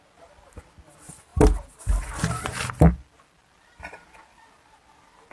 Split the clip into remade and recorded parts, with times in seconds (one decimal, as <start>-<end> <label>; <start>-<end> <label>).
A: 0.0-5.3 recorded

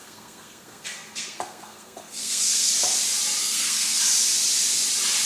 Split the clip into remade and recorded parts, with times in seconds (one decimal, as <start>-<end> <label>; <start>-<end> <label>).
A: 0.0-2.7 remade; 2.7-3.4 recorded; 3.4-4.0 remade; 4.0-5.3 recorded